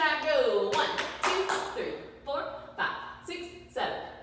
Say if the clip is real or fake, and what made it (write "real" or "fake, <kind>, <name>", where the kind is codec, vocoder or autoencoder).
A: real